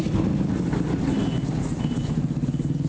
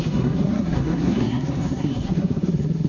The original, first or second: first